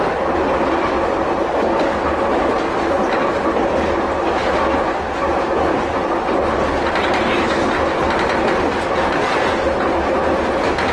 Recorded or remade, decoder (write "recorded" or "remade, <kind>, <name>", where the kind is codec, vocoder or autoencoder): recorded